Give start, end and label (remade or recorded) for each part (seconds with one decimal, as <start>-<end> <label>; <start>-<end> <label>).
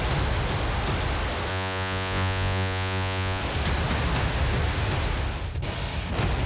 0.0-1.5 recorded; 1.5-3.4 remade; 3.4-6.5 recorded